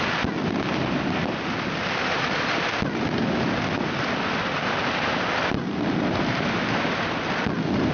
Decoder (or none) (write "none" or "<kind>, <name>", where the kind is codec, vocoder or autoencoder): none